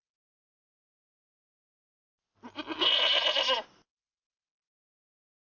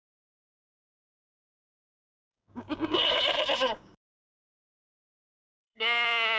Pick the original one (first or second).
first